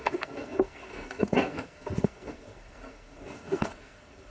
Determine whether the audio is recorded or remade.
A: remade